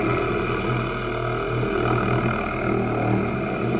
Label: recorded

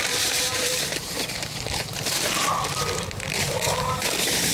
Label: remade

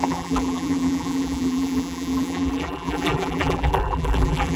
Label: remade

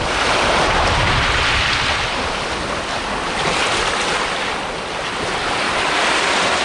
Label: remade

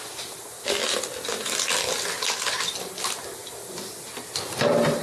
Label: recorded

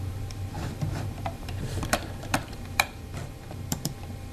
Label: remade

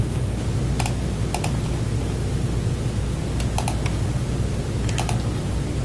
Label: recorded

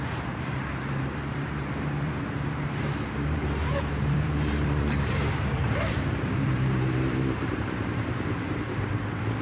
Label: remade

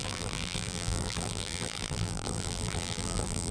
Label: remade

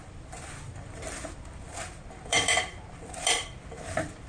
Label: remade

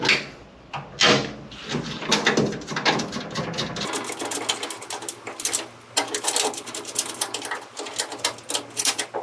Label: recorded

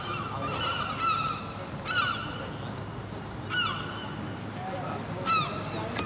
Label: recorded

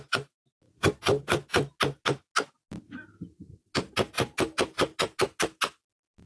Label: recorded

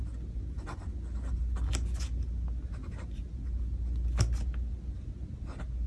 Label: recorded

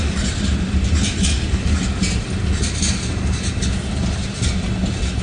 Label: recorded